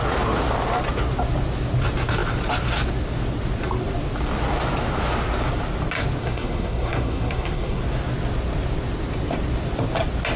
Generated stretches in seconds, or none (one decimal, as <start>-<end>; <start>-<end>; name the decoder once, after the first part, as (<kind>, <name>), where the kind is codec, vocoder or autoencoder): 6.2-7.8 (codec, SNAC)